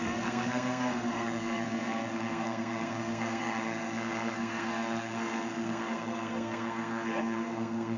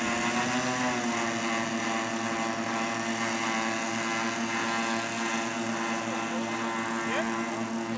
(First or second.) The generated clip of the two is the first